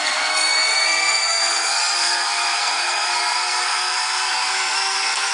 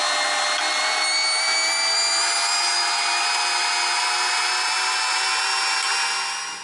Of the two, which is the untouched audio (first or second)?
second